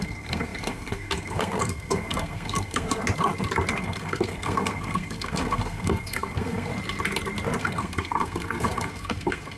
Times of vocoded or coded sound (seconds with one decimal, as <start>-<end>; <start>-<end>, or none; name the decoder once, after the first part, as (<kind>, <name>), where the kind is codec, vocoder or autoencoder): 0.0-3.0 (codec, SNAC); 3.8-6.7; 7.6-9.6